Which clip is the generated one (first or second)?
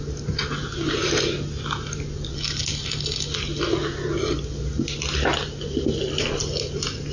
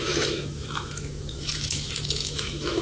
second